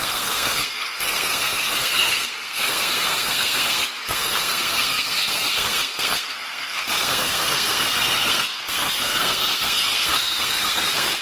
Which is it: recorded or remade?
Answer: remade